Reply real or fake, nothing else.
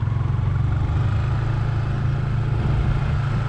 real